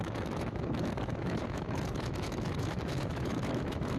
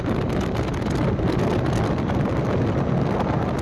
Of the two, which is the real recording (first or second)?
second